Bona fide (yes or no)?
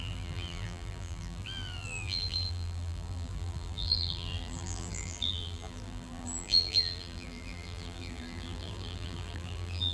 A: no